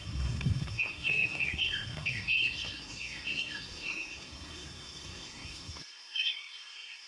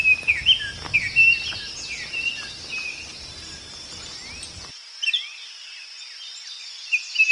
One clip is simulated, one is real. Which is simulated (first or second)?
first